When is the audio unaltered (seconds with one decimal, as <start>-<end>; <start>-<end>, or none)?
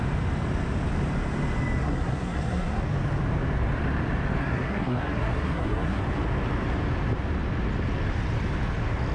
0.0-1.8; 2.8-4.4; 6.0-9.1